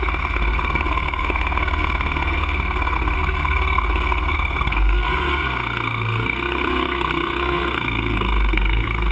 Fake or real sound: fake